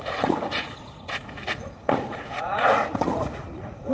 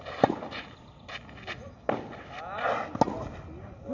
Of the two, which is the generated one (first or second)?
first